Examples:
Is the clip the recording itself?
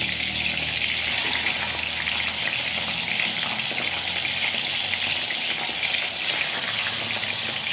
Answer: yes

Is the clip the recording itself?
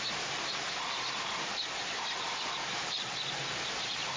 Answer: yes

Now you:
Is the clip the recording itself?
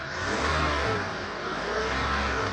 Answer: no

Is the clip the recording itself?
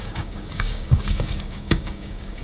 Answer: no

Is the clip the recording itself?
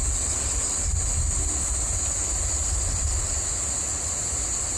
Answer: yes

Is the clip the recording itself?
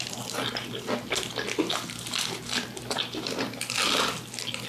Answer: yes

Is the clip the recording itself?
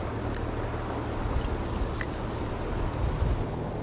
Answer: yes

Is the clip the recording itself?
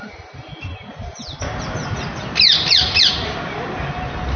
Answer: yes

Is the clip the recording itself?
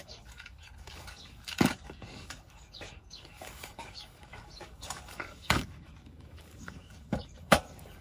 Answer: no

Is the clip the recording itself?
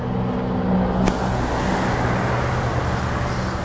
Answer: yes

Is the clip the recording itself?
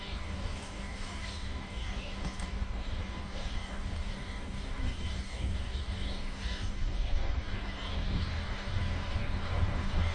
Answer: no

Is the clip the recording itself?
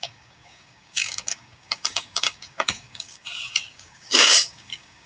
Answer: no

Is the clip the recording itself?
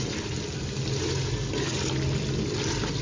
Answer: yes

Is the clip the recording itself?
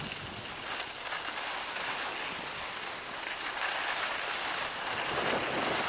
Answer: yes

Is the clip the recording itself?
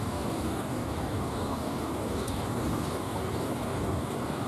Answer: no